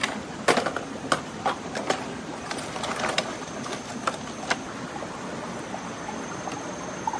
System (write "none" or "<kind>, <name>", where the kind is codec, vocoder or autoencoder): none